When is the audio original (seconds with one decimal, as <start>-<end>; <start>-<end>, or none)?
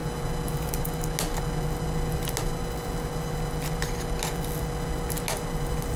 0.0-6.0